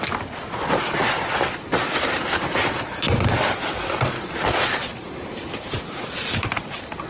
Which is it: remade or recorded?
recorded